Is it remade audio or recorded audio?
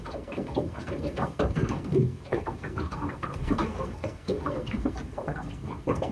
remade